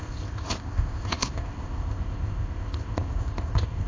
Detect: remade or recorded remade